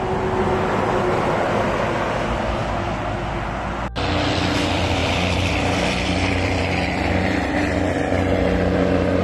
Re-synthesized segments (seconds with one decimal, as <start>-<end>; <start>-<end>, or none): 5.0-8.1